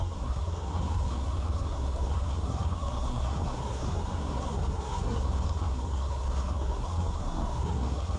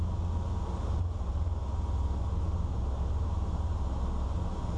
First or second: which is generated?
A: first